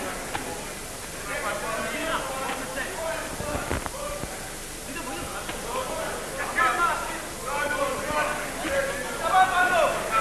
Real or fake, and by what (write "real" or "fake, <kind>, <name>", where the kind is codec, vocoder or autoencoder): real